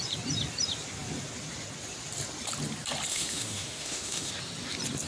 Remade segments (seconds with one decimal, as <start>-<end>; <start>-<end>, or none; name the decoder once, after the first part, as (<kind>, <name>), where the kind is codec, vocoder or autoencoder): 3.1-4.3 (autoencoder, DAC-VAE)